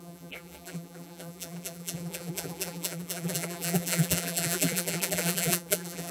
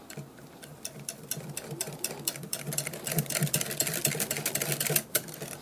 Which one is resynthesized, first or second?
first